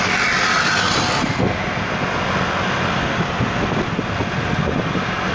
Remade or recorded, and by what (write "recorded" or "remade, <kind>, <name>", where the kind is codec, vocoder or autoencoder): recorded